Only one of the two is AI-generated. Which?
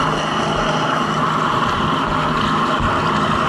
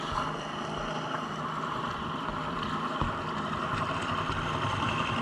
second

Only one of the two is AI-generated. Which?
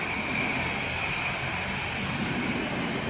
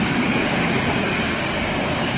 second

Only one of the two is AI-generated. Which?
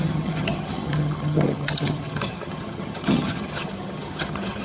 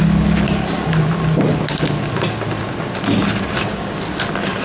first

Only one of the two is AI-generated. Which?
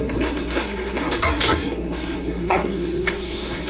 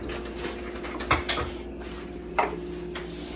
first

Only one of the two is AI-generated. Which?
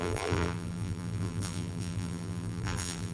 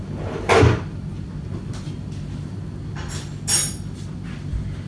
first